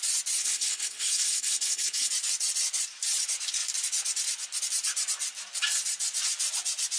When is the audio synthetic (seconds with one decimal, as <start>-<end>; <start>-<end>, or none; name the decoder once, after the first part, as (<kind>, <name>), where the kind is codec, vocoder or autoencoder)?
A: 0.4-2.1 (codec, HILCodec)